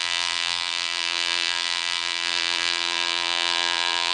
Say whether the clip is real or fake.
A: fake